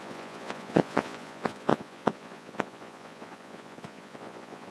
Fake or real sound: fake